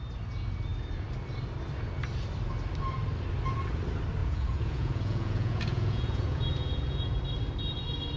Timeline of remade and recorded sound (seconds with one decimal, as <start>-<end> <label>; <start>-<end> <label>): 0.0-4.2 recorded; 4.2-7.2 remade; 7.2-8.2 recorded